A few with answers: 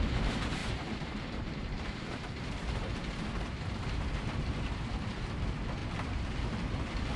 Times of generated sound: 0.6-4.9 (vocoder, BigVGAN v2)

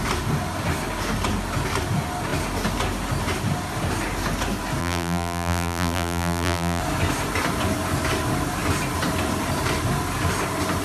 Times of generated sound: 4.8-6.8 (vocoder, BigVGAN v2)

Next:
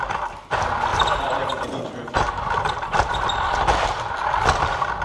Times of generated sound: 0.9-3.3 (vocoder, BigVGAN v2)